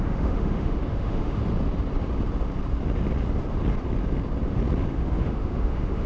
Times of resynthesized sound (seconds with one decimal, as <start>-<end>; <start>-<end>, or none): 0.0-1.4; 4.9-6.1